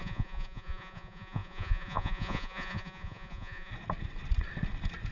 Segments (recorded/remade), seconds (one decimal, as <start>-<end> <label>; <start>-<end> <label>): 0.0-3.7 remade; 3.7-5.1 recorded